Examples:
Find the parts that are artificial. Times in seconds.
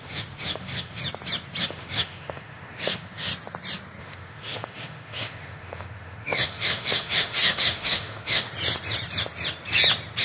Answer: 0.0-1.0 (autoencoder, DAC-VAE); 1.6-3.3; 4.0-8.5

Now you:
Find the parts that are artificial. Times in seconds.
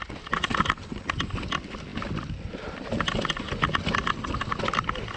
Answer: none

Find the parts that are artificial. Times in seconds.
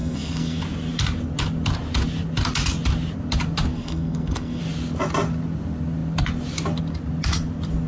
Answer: 0.0-0.6 (codec, SNAC); 3.7-4.6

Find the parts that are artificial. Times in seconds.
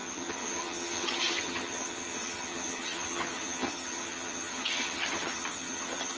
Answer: 0.0-6.2 (vocoder, HiFi-GAN)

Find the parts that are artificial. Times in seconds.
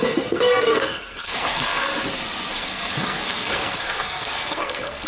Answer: 0.0-1.9 (codec, SNAC); 2.5-5.1